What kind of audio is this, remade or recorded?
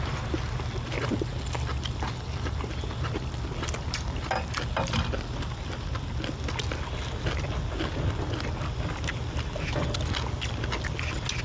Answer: recorded